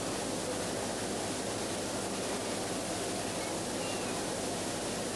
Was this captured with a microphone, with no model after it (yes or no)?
yes